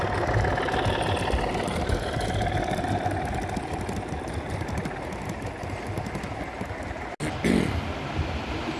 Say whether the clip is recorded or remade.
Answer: recorded